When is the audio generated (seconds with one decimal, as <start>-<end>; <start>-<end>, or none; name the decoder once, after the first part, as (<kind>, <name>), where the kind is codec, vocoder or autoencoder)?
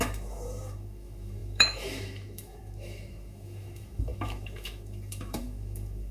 0.0-6.1 (autoencoder, DAC-VAE)